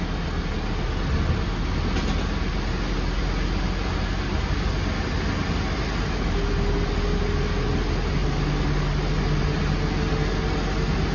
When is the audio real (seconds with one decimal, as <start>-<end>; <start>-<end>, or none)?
0.0-11.1